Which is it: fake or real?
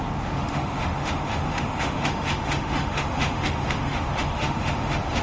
fake